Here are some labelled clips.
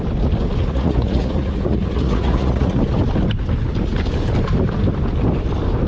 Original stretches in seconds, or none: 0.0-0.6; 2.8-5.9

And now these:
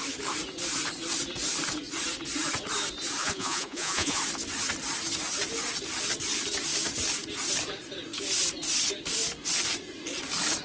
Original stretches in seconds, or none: 0.0-3.2; 4.2-10.6

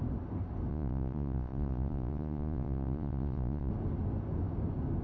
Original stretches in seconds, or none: 0.0-0.7; 3.7-5.0

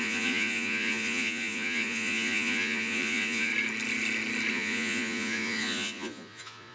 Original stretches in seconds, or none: 3.5-4.5

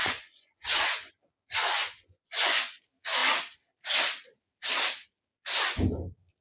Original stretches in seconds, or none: 1.1-1.6; 2.8-6.4

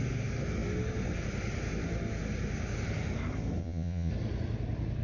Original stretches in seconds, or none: 0.0-3.6; 4.1-5.0

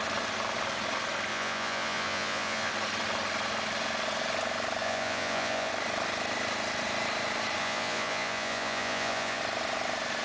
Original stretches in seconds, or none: 0.0-1.3; 2.7-4.8; 5.7-7.6; 9.4-10.2

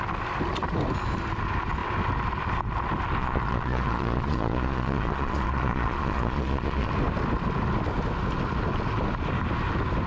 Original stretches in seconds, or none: 0.0-3.2; 6.9-10.1